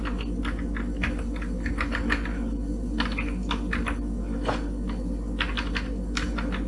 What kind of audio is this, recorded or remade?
recorded